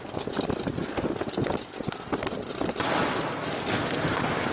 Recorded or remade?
recorded